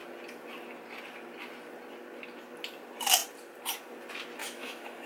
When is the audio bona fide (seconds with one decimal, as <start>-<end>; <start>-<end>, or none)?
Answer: 0.0-4.4